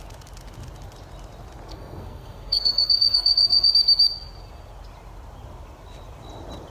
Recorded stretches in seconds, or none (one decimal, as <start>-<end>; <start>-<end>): 0.0-1.7; 3.7-6.7